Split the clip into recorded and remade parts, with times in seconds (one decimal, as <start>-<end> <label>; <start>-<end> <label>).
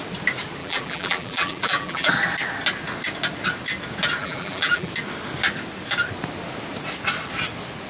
0.0-0.6 recorded; 0.6-2.1 remade; 2.1-4.2 recorded; 4.2-4.9 remade; 4.9-7.9 recorded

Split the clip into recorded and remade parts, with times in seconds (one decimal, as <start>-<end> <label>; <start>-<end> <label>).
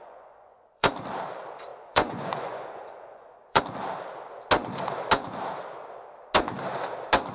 0.0-0.9 remade; 0.9-1.7 recorded; 1.7-3.6 remade; 3.6-7.3 recorded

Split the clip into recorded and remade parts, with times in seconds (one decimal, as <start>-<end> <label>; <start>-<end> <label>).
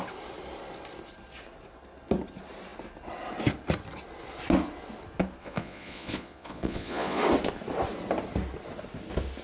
0.0-5.4 recorded; 5.4-7.2 remade; 7.2-9.4 recorded